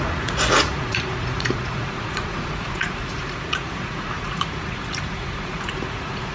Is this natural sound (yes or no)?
no